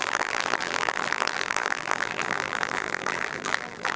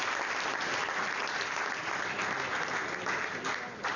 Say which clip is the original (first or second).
second